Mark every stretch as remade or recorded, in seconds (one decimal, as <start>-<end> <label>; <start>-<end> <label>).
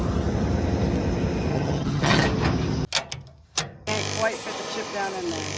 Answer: 0.0-1.5 recorded; 1.5-2.2 remade; 2.2-5.6 recorded